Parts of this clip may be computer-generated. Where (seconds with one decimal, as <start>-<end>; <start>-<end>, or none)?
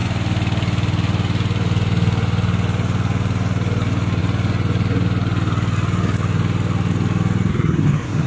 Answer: 7.5-8.3